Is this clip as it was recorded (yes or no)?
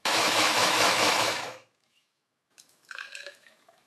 no